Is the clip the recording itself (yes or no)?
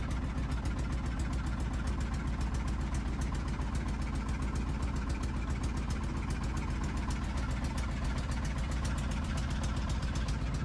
yes